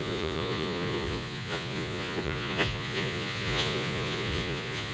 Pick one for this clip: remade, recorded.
remade